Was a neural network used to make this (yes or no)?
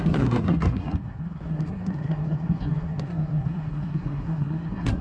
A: yes